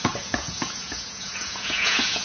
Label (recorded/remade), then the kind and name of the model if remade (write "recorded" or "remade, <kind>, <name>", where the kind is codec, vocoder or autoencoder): remade, vocoder, Vocos